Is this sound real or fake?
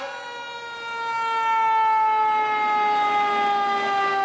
real